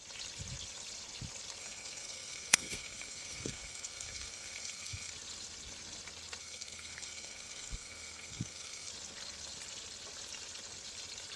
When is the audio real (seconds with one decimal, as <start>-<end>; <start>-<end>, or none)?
0.0-1.6; 5.1-6.4; 8.9-11.4